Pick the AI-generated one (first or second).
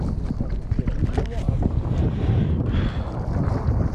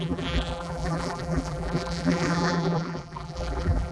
second